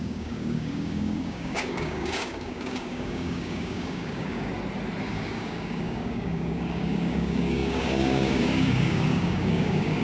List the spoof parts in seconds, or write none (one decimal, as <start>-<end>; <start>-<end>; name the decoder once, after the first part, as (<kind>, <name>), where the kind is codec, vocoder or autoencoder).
0.0-4.5 (codec, DAC); 5.0-10.0